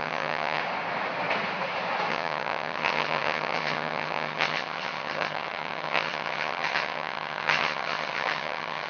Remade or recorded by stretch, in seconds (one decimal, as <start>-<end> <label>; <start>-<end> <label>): 0.0-0.6 remade; 0.6-2.1 recorded; 2.1-8.9 remade